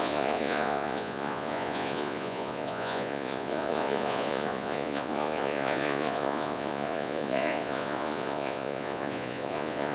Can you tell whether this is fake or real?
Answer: fake